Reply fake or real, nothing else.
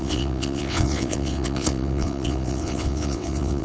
fake